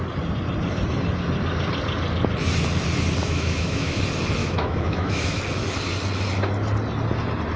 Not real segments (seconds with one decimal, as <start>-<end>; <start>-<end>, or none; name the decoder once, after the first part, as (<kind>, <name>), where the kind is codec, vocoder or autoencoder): 3.2-4.0 (autoencoder, DAC-VAE); 4.4-5.4